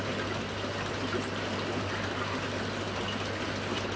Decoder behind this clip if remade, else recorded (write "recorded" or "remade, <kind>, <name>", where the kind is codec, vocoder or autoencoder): recorded